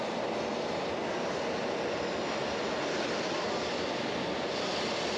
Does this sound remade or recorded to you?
recorded